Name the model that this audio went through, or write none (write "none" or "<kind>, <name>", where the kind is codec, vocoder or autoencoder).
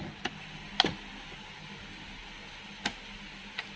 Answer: none